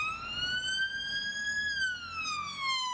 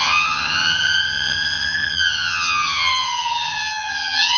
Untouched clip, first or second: first